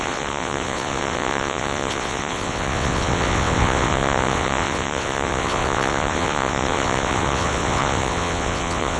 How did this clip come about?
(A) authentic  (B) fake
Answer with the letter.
B